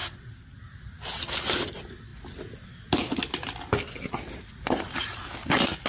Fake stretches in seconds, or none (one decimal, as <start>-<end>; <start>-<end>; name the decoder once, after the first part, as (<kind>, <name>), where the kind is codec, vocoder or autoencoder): none